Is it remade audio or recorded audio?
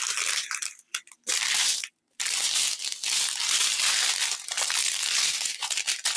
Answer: recorded